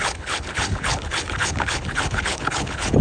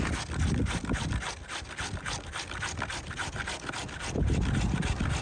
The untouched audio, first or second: second